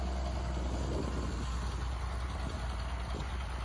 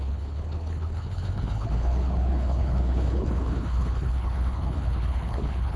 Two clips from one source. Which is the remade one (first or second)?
second